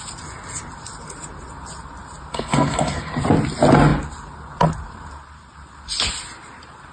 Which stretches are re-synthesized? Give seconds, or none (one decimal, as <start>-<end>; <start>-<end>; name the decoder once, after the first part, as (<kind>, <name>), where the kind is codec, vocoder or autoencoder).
2.3-3.1 (codec, SNAC)